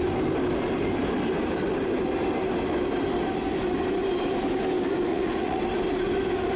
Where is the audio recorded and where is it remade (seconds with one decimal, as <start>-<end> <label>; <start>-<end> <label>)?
0.0-5.1 recorded; 5.1-5.6 remade; 5.6-6.6 recorded